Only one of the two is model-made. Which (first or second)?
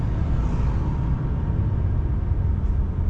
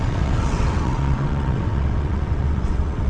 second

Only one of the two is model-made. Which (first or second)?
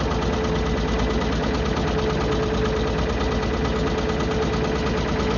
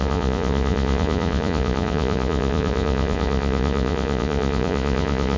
second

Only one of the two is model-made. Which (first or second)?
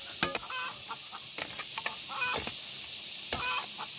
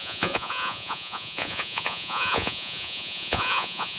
second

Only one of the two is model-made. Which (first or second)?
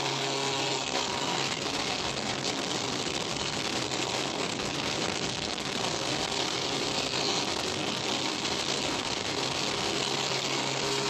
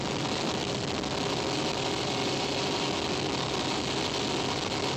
first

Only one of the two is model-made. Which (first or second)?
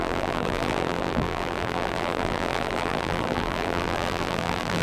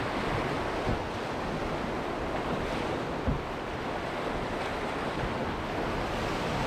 first